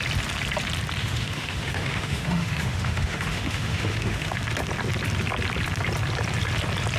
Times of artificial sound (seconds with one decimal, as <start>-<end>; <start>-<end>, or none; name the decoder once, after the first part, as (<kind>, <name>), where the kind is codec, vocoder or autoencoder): 1.0-4.4 (autoencoder, DAC-VAE)